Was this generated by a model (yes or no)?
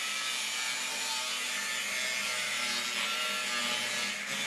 no